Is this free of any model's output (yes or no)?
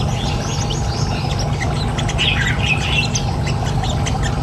yes